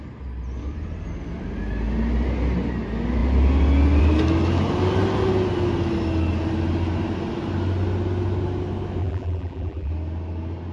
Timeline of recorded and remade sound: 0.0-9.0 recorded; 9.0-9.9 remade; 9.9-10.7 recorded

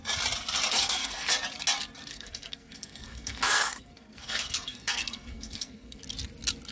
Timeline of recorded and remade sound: 0.0-0.7 recorded; 0.7-1.3 remade; 1.3-2.1 recorded; 2.1-6.0 remade; 6.0-6.7 recorded

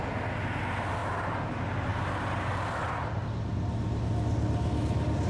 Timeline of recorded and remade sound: 0.0-5.3 recorded

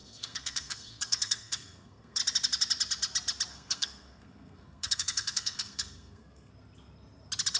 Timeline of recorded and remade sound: 0.0-2.2 remade; 2.2-3.5 recorded; 3.5-6.5 remade; 6.5-7.6 recorded

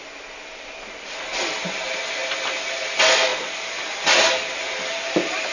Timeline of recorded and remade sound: 0.0-5.5 recorded